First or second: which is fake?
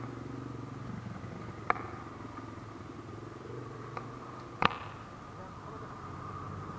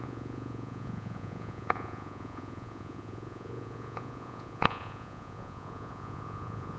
second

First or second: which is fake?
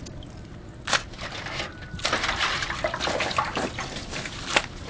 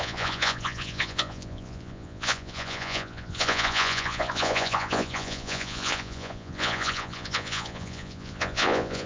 second